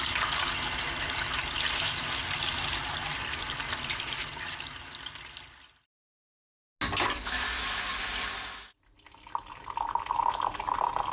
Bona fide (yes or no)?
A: yes